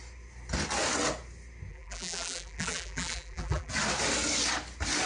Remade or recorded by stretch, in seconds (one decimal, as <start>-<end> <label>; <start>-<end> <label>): 0.0-1.7 recorded; 1.7-3.7 remade; 3.7-5.1 recorded